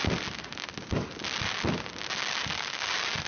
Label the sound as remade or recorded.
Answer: recorded